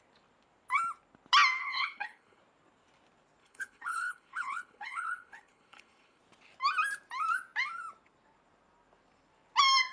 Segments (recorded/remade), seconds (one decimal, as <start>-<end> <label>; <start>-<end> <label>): 0.0-1.6 recorded; 1.6-2.4 remade; 2.4-3.4 recorded; 3.4-6.2 remade; 6.2-9.9 recorded